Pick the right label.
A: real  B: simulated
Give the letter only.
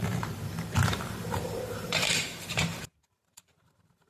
B